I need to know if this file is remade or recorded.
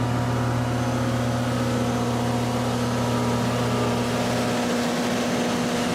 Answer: recorded